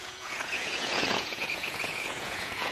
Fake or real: fake